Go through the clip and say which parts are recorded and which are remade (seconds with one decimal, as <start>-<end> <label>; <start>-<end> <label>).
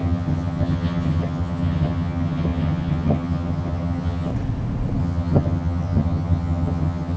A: 0.0-4.3 remade; 4.3-5.0 recorded; 5.0-7.2 remade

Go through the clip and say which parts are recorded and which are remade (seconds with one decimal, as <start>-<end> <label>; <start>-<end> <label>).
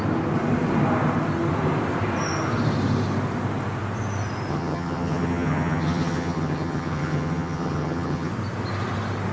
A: 0.0-4.5 recorded; 4.5-8.3 remade; 8.3-9.3 recorded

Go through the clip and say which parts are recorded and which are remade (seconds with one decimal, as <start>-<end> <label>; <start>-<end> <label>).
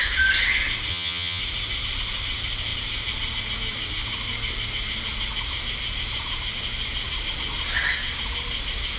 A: 0.0-0.9 recorded; 0.9-1.4 remade; 1.4-9.0 recorded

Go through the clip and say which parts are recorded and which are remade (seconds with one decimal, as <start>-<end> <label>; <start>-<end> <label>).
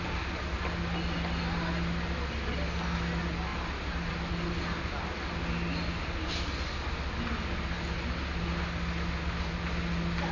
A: 0.0-10.3 recorded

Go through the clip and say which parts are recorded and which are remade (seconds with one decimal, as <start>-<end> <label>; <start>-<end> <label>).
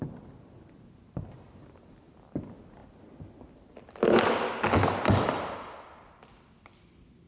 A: 0.0-7.3 recorded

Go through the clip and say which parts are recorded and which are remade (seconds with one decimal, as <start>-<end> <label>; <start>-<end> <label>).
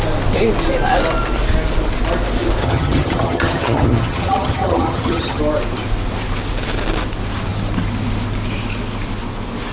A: 0.0-2.6 recorded; 2.6-5.4 remade; 5.4-9.7 recorded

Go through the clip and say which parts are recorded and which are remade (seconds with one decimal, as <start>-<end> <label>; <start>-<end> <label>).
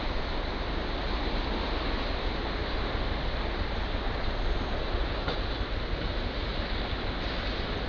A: 0.0-7.9 recorded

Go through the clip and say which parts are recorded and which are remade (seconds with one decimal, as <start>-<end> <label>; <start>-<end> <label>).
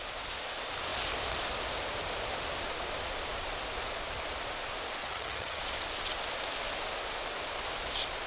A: 0.0-5.0 recorded; 5.0-5.6 remade; 5.6-8.3 recorded